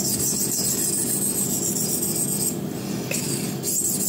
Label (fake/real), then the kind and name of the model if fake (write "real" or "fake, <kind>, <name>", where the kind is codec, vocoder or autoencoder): real